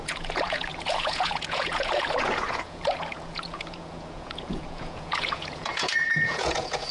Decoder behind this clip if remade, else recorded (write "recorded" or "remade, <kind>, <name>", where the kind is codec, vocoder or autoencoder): remade, vocoder, Vocos